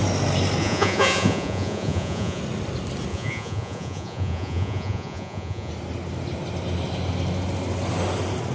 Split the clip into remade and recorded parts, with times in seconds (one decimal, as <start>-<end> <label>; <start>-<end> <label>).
0.0-0.6 recorded; 0.6-2.4 remade; 2.4-3.1 recorded; 3.1-5.7 remade; 5.7-8.5 recorded